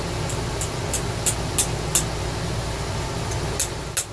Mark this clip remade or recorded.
recorded